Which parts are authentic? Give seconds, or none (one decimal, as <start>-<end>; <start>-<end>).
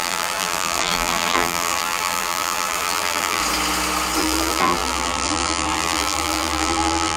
3.4-4.2